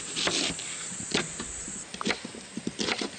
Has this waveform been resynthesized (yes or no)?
no